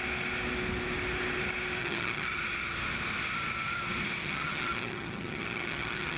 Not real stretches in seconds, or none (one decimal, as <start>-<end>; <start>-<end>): 1.8-2.4; 4.2-6.2